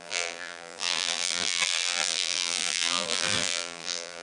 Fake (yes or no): yes